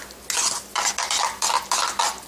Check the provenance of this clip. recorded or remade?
recorded